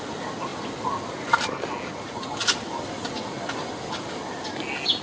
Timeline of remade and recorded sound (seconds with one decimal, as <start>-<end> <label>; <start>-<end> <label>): 0.0-5.0 recorded